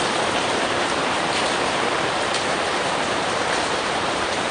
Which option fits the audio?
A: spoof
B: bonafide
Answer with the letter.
A